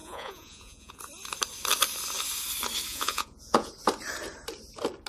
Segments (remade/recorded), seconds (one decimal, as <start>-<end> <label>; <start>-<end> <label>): 0.0-1.0 remade; 1.0-2.9 recorded; 2.9-3.7 remade; 3.7-5.1 recorded